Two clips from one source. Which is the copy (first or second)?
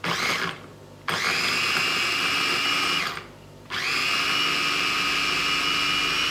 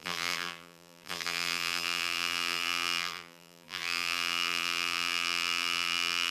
second